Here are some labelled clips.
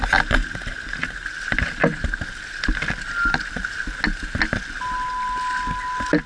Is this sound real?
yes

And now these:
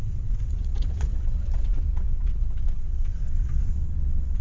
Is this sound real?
no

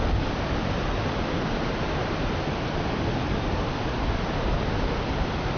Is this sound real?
yes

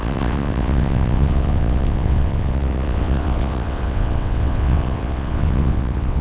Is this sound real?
no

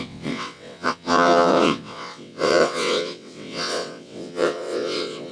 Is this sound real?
no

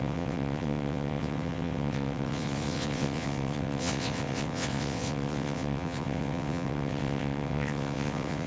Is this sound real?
no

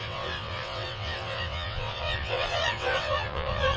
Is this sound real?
no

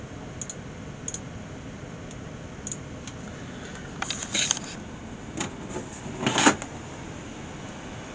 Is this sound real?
yes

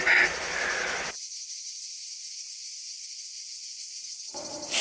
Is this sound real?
yes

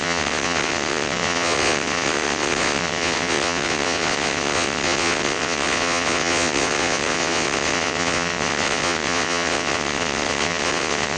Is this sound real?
no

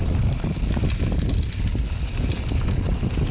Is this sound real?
yes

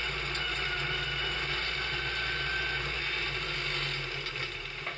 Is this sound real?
yes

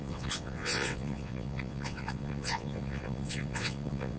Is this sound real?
no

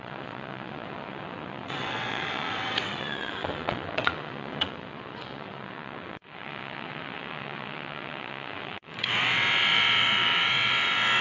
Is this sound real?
no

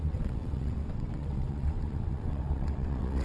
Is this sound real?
no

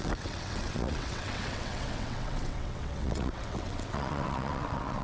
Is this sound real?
no